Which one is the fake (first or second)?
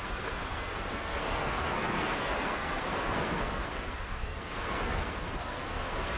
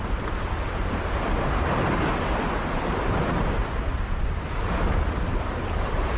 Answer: first